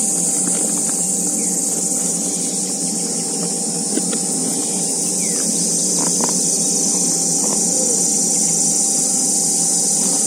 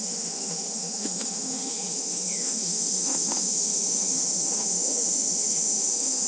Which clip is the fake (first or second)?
second